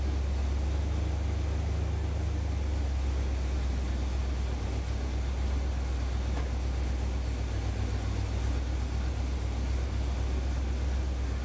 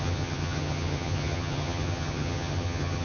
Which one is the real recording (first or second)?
first